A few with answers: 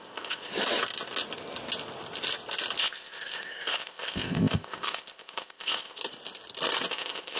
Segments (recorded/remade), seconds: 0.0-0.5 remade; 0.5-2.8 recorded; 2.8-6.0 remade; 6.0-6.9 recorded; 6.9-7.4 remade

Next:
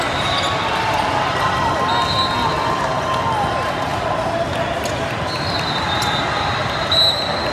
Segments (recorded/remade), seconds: 0.0-7.5 recorded

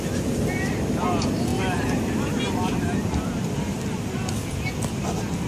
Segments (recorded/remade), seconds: 0.0-5.5 recorded